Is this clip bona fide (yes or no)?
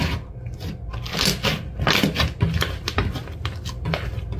yes